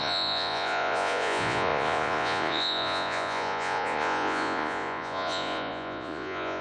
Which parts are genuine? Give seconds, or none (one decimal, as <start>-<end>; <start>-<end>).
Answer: none